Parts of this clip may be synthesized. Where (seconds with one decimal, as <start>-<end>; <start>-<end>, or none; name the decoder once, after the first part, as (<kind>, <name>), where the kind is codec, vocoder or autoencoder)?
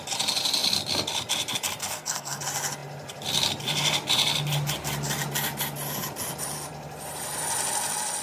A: 1.8-2.4 (codec, SNAC)